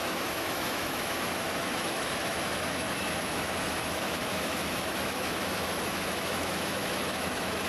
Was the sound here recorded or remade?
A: remade